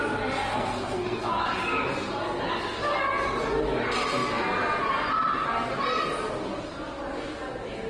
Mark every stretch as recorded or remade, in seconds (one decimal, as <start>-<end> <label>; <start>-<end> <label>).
0.0-0.5 recorded; 0.5-1.4 remade; 1.4-7.9 recorded